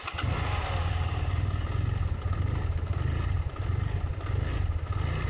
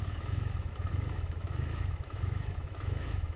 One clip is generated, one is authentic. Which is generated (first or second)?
second